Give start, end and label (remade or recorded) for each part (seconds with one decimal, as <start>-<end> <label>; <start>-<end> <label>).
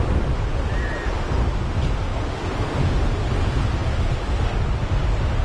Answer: 0.0-5.4 recorded